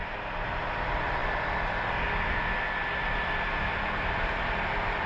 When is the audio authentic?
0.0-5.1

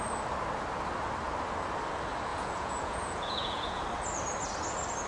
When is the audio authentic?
0.0-2.3; 3.8-5.1